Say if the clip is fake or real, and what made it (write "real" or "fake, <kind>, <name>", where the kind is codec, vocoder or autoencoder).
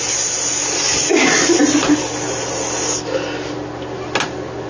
real